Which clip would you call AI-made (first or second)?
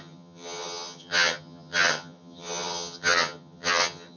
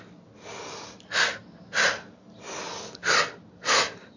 first